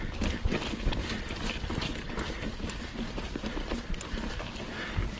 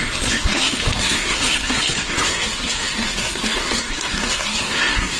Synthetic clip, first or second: second